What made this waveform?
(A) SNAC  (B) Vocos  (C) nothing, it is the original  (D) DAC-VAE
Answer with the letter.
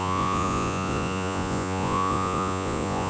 B